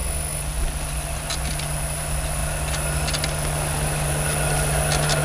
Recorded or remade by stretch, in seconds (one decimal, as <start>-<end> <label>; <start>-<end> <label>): 0.0-5.2 recorded